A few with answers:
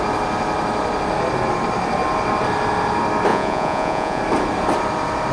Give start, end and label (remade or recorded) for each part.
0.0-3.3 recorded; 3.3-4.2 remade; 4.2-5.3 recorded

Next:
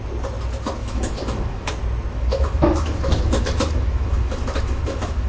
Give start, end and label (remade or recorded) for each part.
0.0-0.8 recorded; 0.8-1.7 remade; 1.7-2.1 recorded; 2.1-5.3 remade

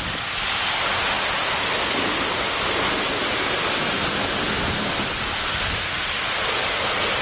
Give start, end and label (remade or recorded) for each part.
0.0-7.2 recorded

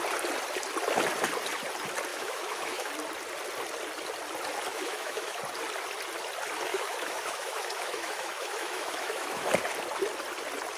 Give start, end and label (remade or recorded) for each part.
0.0-2.1 recorded; 2.1-2.9 remade; 2.9-4.7 recorded; 4.7-5.4 remade; 5.4-6.7 recorded; 6.7-9.5 remade; 9.5-10.8 recorded

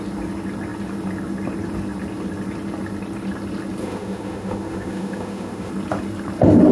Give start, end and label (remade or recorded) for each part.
0.0-3.8 recorded; 3.8-5.7 remade; 5.7-6.7 recorded

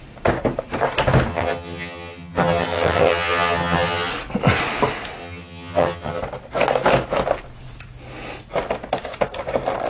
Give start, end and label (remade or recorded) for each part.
0.0-1.3 recorded; 1.3-4.1 remade; 4.1-5.2 recorded; 5.2-6.2 remade; 6.2-9.9 recorded

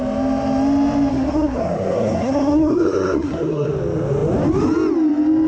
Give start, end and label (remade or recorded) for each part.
0.0-1.1 recorded; 1.1-3.7 remade; 3.7-5.5 recorded

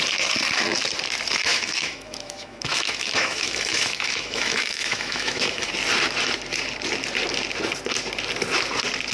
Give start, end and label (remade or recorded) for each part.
0.0-1.5 recorded; 1.5-5.7 remade; 5.7-9.1 recorded